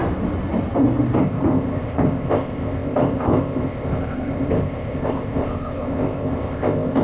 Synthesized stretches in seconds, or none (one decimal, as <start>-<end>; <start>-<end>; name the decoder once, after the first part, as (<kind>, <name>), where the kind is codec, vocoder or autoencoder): 1.2-7.0 (codec, ZipCodec)